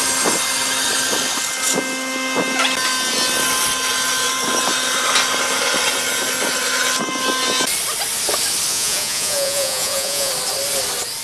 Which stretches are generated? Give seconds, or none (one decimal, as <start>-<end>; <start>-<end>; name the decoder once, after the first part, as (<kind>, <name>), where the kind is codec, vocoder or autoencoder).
8.7-10.3 (vocoder, Vocos)